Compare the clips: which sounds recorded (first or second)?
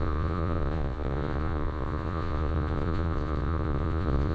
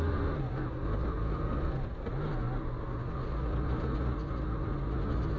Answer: second